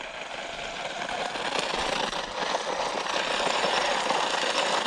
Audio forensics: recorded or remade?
recorded